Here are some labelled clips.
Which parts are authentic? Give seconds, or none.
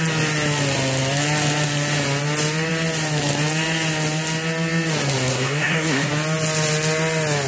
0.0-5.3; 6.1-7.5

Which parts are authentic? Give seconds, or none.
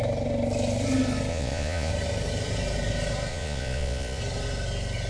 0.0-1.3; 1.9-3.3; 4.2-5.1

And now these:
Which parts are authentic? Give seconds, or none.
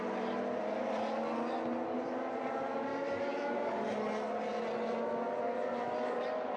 0.0-2.9; 3.7-6.6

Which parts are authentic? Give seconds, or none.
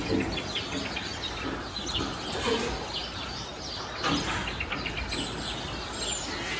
0.0-1.1; 1.9-3.0; 3.9-4.4; 4.9-6.6